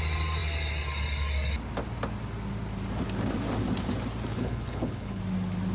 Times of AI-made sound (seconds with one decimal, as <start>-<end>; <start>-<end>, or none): 4.3-5.2